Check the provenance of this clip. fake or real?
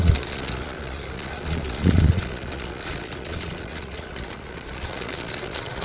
fake